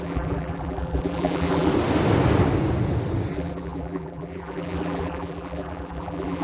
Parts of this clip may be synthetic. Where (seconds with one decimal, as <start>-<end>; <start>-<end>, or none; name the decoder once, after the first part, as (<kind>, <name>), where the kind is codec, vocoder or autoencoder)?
0.0-1.7 (vocoder, BigVGAN v2); 3.3-6.4